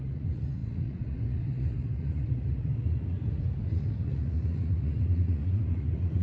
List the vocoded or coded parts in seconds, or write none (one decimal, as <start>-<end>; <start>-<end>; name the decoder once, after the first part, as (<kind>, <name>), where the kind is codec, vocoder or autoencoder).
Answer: 0.0-6.2 (vocoder, Vocos)